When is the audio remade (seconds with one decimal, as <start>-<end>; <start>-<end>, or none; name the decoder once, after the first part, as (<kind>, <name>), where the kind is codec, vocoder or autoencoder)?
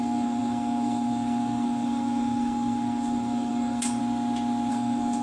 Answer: 0.0-4.0 (codec, SNAC); 4.7-5.2